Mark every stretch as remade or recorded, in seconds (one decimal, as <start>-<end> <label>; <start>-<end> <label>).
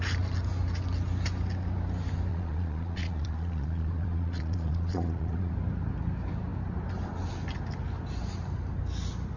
0.0-2.3 recorded; 2.3-5.5 remade; 5.5-9.4 recorded